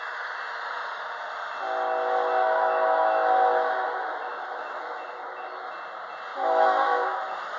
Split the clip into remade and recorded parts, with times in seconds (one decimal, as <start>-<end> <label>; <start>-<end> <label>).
0.0-2.4 recorded; 2.4-5.7 remade; 5.7-6.3 recorded; 6.3-7.6 remade